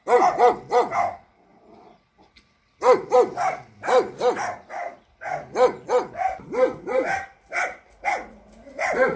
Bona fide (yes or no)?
yes